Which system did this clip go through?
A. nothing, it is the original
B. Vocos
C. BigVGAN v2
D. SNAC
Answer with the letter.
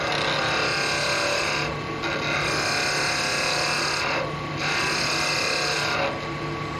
A